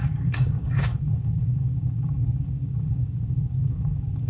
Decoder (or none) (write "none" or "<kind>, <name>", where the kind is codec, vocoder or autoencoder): codec, DAC